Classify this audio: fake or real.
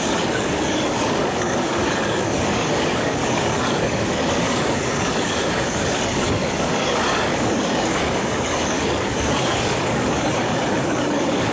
fake